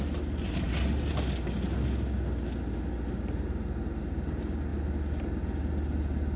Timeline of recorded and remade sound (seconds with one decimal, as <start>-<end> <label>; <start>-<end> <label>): 0.0-6.4 recorded